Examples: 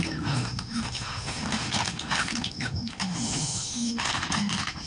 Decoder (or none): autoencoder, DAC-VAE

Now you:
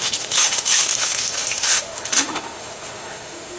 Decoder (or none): autoencoder, DAC-VAE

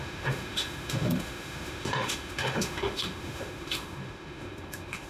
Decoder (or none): autoencoder, DAC-VAE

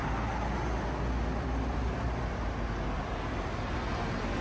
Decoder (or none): none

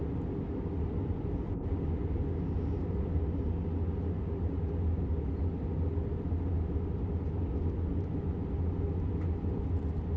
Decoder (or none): none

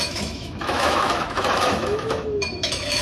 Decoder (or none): autoencoder, DAC-VAE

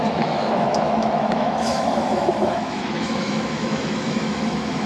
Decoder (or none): autoencoder, DAC-VAE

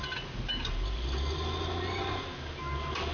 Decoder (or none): none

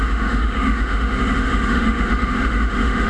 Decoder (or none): autoencoder, DAC-VAE